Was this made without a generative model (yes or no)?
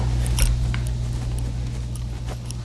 yes